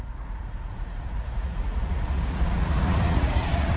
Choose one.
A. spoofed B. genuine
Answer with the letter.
A